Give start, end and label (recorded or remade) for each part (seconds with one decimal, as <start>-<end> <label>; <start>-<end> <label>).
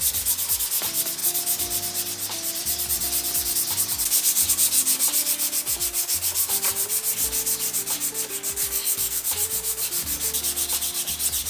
0.0-8.6 recorded; 8.6-9.3 remade; 9.3-11.5 recorded